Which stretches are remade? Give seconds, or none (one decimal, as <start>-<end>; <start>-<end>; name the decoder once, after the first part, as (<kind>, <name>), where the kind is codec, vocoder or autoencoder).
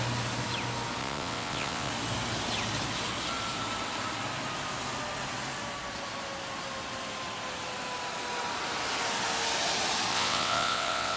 1.0-1.9 (vocoder, WaveNeXt); 10.1-11.2